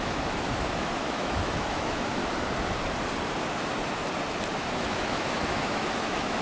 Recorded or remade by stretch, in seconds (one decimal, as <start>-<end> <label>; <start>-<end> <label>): 0.0-2.2 remade; 2.2-4.5 recorded; 4.5-6.4 remade

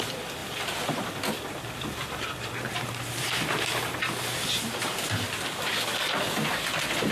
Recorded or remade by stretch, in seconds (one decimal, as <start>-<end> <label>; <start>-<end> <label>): 0.0-7.1 recorded

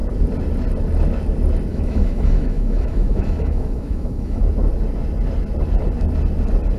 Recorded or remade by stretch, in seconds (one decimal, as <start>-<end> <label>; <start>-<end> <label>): 0.0-1.7 recorded; 1.7-4.4 remade; 4.4-6.8 recorded

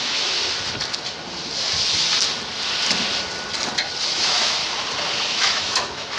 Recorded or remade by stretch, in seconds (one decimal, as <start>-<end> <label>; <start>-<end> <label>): 0.0-0.4 remade; 0.4-4.1 recorded; 4.1-4.6 remade; 4.6-5.3 recorded; 5.3-6.2 remade

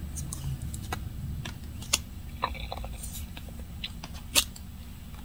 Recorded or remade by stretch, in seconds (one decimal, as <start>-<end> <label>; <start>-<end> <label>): 0.0-5.2 recorded